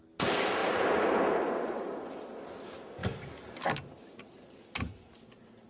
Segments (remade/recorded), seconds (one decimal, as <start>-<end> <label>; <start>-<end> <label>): 0.0-3.0 recorded; 3.0-3.7 remade; 3.7-5.7 recorded